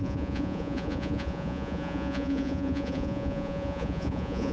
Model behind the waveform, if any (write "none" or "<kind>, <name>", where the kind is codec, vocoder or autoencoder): vocoder, Vocos